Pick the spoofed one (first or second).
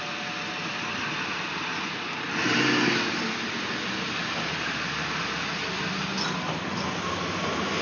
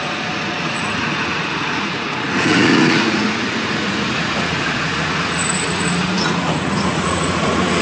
second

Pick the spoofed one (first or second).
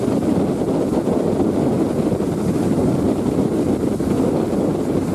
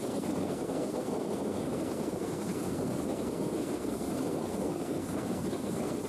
second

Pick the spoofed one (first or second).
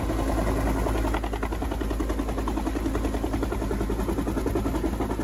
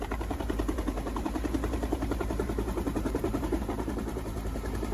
second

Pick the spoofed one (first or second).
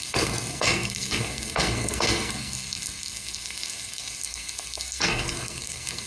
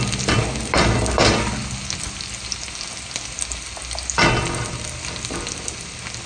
first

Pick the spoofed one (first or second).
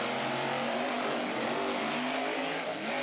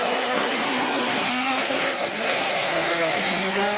second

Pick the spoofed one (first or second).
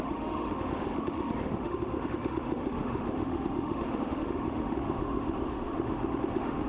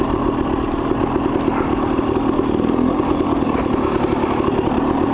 first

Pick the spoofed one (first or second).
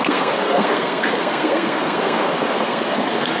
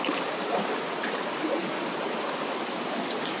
first